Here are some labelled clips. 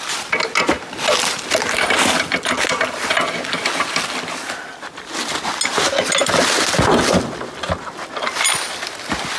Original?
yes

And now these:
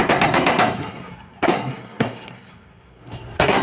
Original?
no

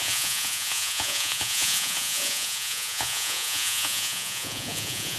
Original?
no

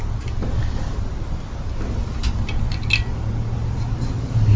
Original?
yes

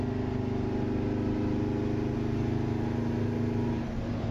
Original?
yes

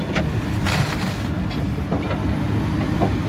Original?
yes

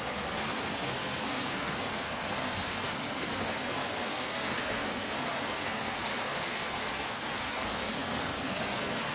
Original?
no